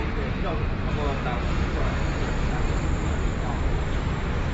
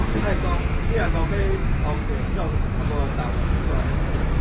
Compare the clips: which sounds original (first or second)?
first